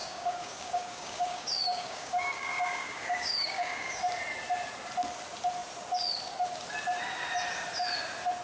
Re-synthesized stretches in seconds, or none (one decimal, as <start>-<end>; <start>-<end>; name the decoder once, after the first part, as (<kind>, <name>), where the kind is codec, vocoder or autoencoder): 0.0-4.0 (codec, DAC)